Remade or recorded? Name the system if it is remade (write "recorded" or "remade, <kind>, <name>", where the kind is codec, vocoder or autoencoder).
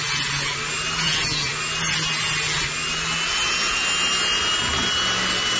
recorded